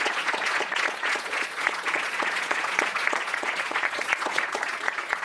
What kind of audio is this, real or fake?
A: fake